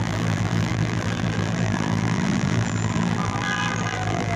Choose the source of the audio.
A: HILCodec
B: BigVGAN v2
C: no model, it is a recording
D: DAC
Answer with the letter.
B